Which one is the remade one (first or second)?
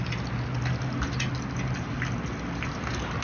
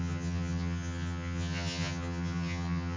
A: second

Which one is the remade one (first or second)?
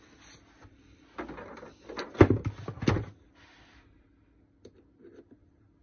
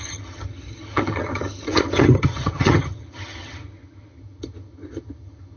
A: second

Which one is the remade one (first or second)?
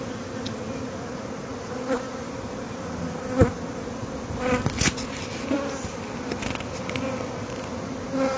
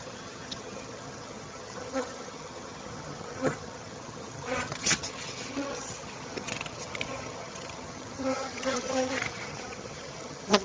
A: second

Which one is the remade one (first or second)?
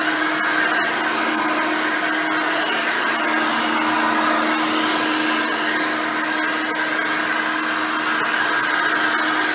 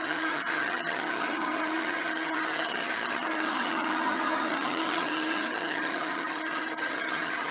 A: second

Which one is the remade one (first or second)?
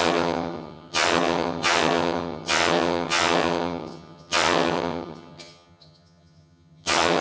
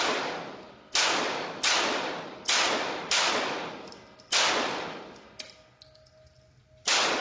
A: first